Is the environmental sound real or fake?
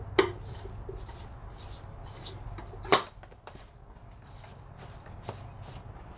real